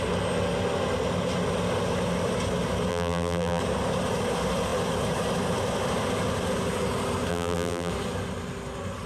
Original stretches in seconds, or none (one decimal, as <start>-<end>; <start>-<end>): 0.0-2.9; 3.6-7.3; 7.9-9.1